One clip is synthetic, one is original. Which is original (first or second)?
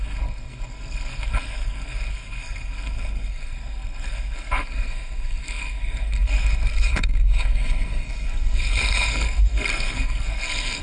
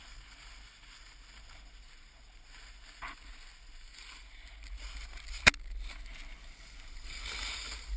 second